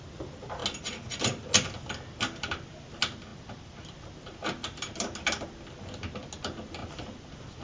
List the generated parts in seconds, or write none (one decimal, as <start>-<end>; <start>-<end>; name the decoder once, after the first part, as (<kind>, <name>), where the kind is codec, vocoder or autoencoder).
none